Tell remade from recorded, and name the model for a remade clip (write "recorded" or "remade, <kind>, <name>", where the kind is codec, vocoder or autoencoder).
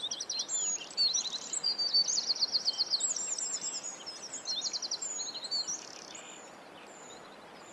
recorded